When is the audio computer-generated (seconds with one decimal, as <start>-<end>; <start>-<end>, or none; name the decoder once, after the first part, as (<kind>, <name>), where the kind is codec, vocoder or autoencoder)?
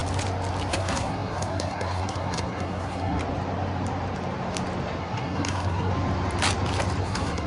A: 0.7-3.2 (codec, SNAC); 5.0-5.9; 7.0-7.5